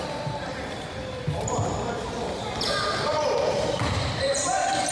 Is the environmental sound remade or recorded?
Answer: remade